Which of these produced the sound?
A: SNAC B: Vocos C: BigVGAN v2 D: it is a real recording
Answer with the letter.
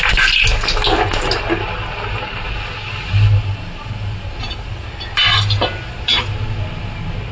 D